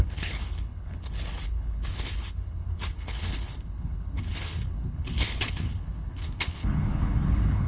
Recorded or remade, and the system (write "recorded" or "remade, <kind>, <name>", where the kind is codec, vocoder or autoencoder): remade, codec, HILCodec